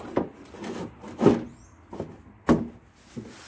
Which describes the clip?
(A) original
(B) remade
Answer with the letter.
A